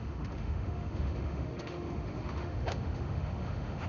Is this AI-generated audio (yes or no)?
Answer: yes